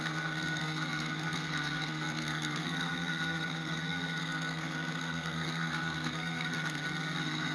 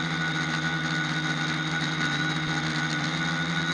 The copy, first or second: first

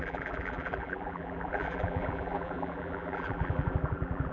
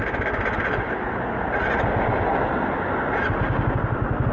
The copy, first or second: first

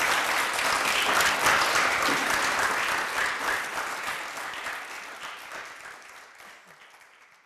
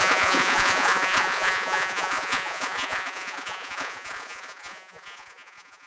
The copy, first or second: second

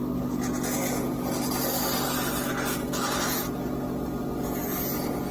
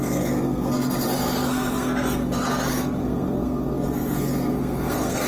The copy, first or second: second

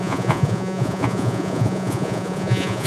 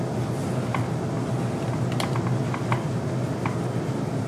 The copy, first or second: first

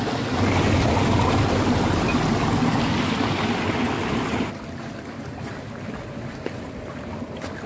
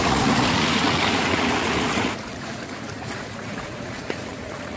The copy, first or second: second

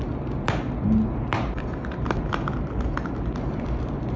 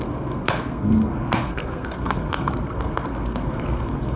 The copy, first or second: second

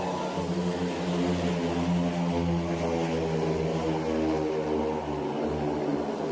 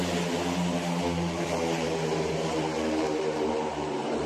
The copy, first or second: second